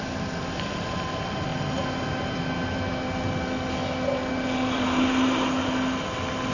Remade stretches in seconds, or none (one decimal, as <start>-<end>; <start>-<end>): none